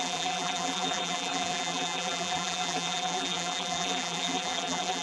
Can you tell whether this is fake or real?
fake